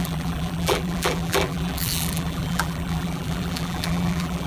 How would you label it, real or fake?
fake